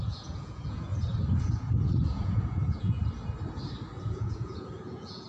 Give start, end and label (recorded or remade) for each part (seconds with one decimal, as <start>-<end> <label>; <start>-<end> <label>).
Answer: 0.0-0.9 remade; 0.9-1.4 recorded; 1.4-3.0 remade; 3.0-4.0 recorded; 4.0-5.3 remade